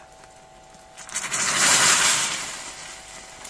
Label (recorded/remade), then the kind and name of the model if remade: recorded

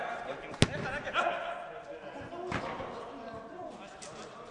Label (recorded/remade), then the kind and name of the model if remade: recorded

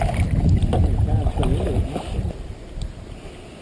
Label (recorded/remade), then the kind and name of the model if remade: recorded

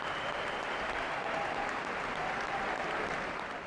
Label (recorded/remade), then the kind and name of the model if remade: recorded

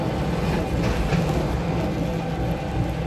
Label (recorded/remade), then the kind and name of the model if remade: recorded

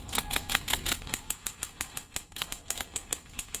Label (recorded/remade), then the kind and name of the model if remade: remade, codec, SNAC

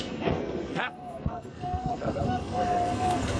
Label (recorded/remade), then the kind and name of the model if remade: remade, codec, SNAC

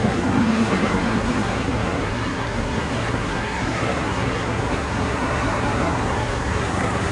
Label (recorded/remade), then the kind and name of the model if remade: remade, codec, SNAC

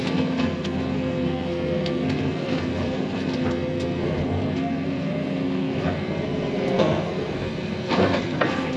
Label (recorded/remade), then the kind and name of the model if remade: remade, codec, SNAC